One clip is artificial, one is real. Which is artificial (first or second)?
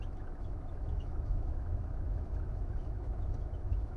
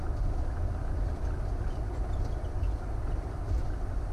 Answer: first